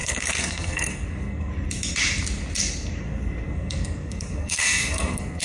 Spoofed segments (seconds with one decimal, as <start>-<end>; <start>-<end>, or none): 0.0-1.5; 3.0-5.4